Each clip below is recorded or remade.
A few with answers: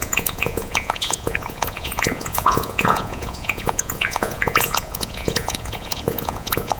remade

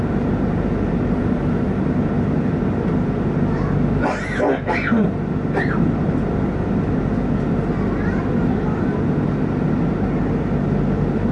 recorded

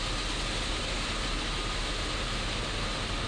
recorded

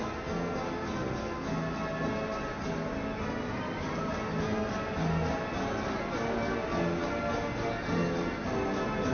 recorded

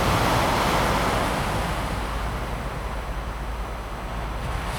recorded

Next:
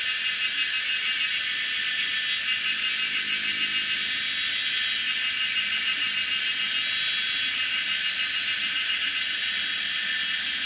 recorded